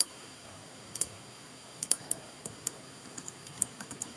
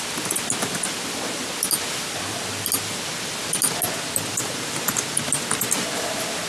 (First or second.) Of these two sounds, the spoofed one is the first